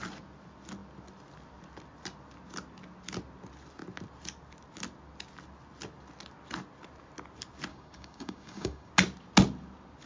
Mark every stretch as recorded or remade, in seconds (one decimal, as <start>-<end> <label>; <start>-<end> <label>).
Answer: 0.0-7.7 recorded; 7.7-8.9 remade; 8.9-10.1 recorded